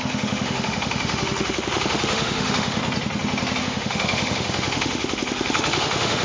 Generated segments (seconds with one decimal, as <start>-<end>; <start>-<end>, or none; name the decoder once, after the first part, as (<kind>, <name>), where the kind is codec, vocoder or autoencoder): 0.0-2.8 (autoencoder, DAC-VAE); 3.6-6.2